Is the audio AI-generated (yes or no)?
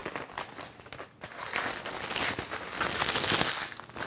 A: no